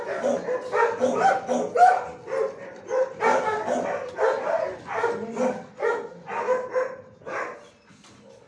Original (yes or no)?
yes